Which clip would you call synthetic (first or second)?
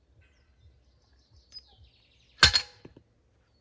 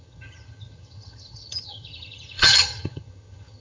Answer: second